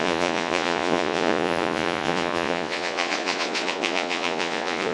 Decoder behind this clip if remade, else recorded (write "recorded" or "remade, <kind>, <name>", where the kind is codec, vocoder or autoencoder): remade, vocoder, Vocos